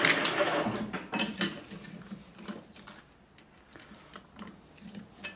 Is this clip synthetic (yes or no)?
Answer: no